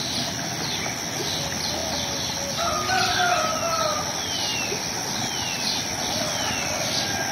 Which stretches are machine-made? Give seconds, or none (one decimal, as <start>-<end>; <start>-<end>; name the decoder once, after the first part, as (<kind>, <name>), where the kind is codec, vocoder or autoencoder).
none